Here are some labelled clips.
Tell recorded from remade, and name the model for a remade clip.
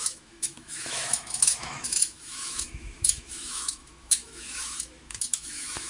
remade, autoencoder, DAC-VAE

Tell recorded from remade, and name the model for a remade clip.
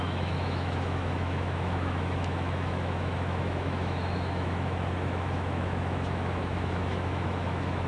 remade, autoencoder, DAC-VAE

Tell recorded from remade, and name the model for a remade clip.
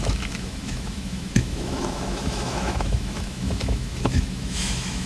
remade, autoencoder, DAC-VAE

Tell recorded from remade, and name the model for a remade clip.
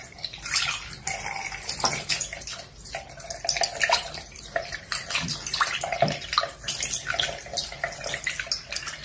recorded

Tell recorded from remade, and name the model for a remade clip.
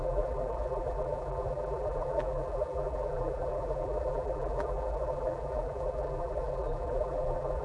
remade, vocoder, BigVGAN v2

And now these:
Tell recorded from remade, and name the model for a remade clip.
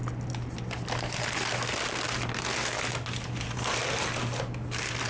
recorded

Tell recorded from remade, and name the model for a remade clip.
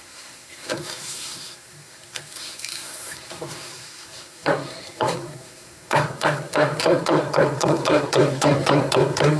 remade, codec, SNAC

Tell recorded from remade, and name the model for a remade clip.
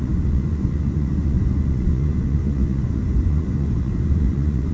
remade, vocoder, Vocos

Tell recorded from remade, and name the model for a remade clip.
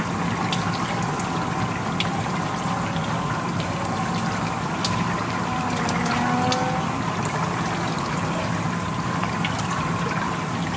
recorded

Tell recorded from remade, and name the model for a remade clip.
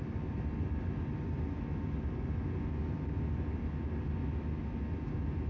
recorded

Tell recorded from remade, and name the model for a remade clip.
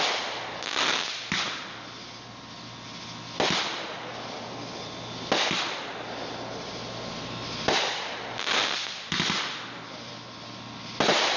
recorded